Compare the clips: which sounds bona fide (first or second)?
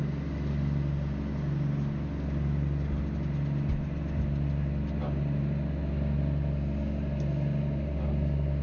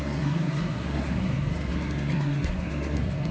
first